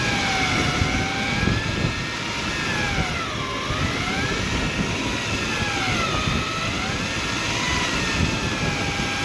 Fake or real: real